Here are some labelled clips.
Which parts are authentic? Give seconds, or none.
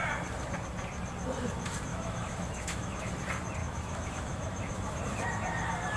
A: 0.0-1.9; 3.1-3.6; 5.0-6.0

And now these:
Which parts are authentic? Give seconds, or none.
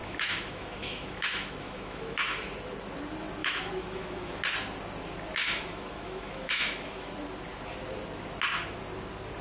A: 2.5-3.4; 4.4-5.4; 7.1-9.4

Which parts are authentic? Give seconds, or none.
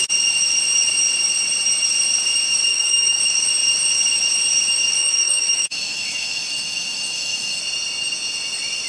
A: 0.0-2.7; 3.2-5.0; 7.6-8.9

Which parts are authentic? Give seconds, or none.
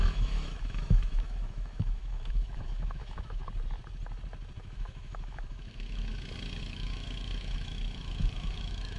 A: 3.4-4.6; 6.1-6.6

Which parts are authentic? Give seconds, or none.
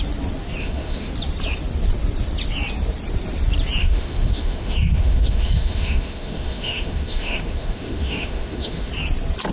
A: 0.0-0.6; 1.1-3.8; 8.9-9.5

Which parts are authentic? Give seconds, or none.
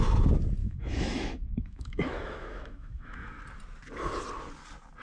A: 0.0-0.6; 3.4-5.0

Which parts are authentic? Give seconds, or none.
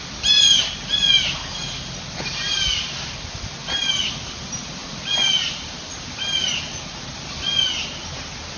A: 0.0-8.6